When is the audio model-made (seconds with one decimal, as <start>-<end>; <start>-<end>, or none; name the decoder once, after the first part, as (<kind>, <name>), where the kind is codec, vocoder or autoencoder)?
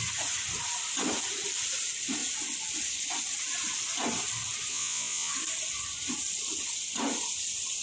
4.7-5.3 (vocoder, Vocos)